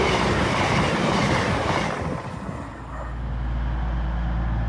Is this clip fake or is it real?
real